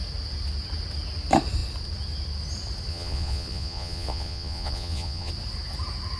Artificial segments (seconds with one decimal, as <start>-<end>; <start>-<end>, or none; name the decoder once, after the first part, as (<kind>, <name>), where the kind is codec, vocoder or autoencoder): 2.9-5.3 (vocoder, Vocos)